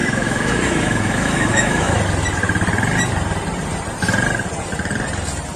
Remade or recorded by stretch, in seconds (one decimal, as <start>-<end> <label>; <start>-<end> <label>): 0.0-2.0 remade; 2.0-5.6 recorded